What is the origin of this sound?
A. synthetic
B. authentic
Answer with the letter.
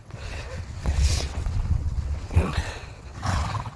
A